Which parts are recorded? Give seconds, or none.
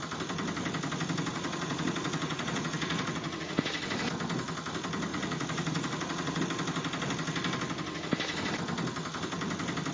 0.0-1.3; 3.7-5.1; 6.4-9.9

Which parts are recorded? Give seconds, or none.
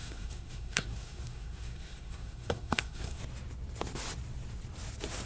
3.2-5.3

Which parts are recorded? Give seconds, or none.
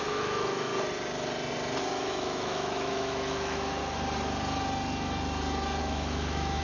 0.7-1.9; 3.8-5.8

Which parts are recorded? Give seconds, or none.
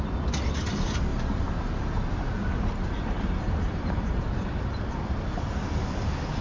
0.0-1.1; 4.9-6.4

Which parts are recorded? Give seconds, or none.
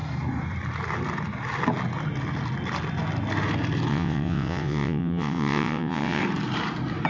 0.0-3.9; 6.2-7.1